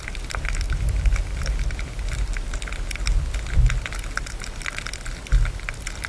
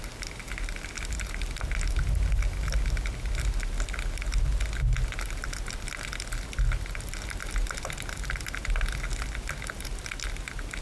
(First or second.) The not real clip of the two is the first